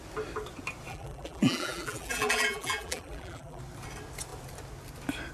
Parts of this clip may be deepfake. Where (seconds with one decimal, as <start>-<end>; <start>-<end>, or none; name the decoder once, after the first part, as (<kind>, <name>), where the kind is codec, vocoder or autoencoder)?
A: 0.9-3.6 (vocoder, BigVGAN v2)